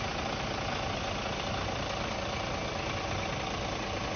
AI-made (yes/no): no